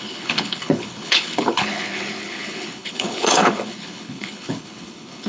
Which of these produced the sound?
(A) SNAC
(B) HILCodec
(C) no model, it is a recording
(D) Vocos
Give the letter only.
B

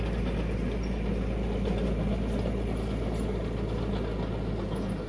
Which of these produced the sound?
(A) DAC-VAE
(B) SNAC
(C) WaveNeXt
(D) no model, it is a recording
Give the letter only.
D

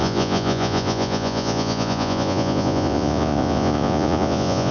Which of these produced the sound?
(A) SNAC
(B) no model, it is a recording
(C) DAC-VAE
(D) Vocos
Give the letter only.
D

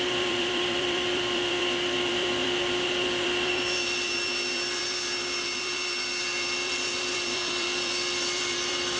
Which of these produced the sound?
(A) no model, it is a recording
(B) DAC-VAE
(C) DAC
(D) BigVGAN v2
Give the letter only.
D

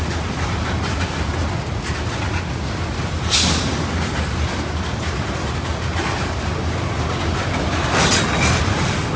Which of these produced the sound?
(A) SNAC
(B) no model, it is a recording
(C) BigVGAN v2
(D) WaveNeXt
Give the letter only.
B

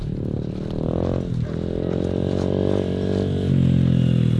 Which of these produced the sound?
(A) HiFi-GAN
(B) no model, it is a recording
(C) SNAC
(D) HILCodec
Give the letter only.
B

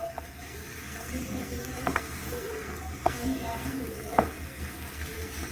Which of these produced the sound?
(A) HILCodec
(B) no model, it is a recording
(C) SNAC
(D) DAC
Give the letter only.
C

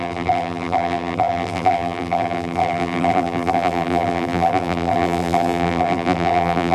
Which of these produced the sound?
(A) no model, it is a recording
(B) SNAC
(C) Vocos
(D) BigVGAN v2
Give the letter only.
D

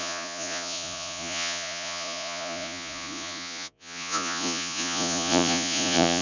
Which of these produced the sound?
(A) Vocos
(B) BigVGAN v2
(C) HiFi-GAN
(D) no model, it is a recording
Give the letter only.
A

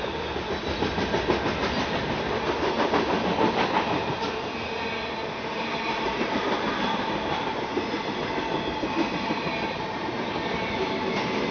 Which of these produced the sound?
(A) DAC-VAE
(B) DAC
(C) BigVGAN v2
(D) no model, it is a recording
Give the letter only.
D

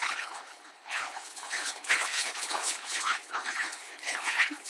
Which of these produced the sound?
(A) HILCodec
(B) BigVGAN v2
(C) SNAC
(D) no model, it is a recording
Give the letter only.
A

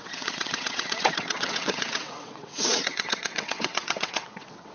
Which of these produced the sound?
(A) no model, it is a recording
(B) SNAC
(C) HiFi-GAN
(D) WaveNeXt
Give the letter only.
D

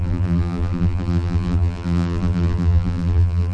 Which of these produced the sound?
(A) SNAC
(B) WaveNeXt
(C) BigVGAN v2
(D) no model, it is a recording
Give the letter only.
C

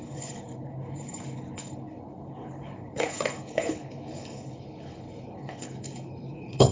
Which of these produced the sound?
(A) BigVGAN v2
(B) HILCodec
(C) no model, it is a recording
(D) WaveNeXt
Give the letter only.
B